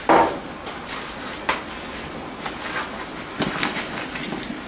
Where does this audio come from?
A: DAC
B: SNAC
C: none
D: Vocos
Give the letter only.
C